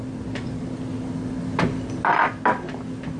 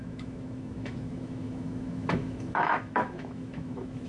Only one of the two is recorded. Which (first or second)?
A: first